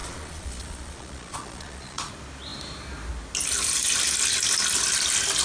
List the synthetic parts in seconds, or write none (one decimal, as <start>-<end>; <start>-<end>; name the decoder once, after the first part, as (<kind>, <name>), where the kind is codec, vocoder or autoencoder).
0.0-2.1 (vocoder, Vocos)